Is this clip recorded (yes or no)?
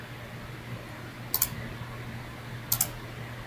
yes